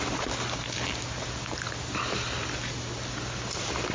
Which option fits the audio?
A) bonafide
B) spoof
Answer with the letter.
A